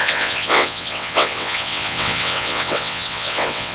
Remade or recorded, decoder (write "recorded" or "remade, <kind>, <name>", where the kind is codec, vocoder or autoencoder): remade, vocoder, WaveNeXt